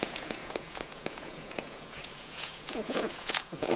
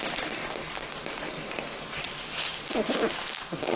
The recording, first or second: second